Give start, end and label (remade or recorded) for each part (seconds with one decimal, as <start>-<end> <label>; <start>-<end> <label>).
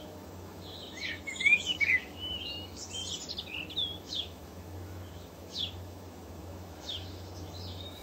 0.0-3.0 remade; 3.0-4.0 recorded; 4.0-8.0 remade